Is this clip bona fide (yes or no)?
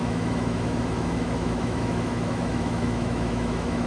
no